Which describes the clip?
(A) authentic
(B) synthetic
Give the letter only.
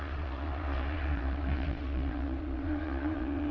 B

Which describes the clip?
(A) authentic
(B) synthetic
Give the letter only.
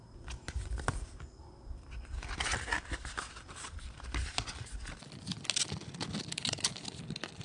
A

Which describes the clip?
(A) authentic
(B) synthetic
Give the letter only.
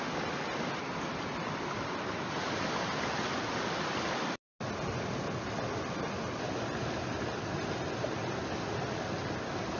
A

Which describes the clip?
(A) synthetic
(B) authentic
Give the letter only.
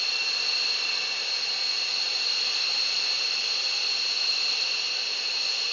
B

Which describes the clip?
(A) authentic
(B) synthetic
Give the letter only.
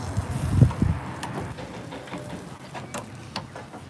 A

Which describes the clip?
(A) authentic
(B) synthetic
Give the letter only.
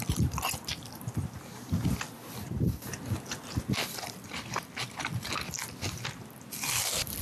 A